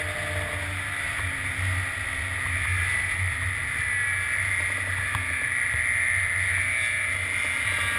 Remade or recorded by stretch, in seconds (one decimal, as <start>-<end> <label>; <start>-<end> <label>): 0.0-8.0 recorded

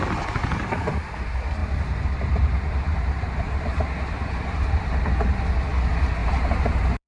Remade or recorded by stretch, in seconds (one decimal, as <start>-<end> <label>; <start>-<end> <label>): 0.0-1.6 recorded; 1.6-5.0 remade; 5.0-6.2 recorded; 6.2-7.1 remade

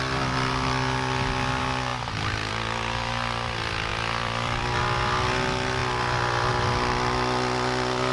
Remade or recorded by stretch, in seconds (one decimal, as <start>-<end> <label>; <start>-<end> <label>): 0.0-1.9 recorded; 1.9-2.5 remade; 2.5-3.9 recorded; 3.9-4.8 remade; 4.8-8.1 recorded

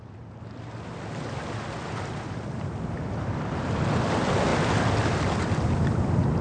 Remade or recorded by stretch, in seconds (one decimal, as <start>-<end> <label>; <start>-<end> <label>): 0.0-6.4 recorded

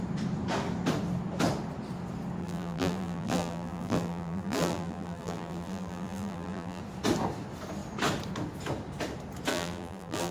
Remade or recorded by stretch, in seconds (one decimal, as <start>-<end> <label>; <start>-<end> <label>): 0.0-2.4 recorded; 2.4-6.8 remade; 6.8-9.5 recorded; 9.5-10.3 remade

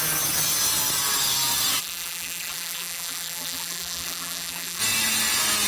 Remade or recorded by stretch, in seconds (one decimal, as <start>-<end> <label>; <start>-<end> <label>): 0.0-1.8 recorded; 1.8-4.8 remade; 4.8-5.7 recorded

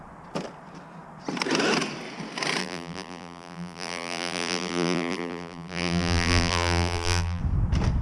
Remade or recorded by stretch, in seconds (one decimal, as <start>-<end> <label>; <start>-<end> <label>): 0.0-2.6 recorded; 2.6-7.4 remade; 7.4-8.0 recorded